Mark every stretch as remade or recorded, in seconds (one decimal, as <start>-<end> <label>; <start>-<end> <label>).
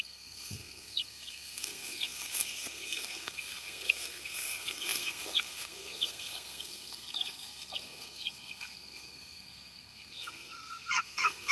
0.0-11.5 remade